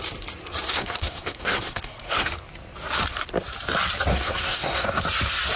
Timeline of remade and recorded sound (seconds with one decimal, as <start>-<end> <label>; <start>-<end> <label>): 0.0-0.7 recorded; 0.7-2.3 remade; 2.3-4.1 recorded; 4.1-5.0 remade; 5.0-5.6 recorded